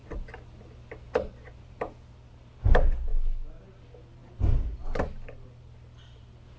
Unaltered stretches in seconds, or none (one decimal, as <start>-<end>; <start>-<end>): 0.0-6.6